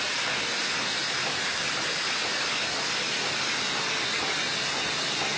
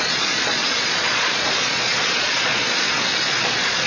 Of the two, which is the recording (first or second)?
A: first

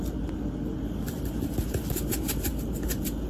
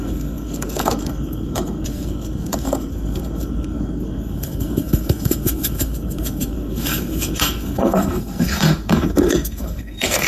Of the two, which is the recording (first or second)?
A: first